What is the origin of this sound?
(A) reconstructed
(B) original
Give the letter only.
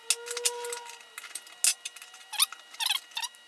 B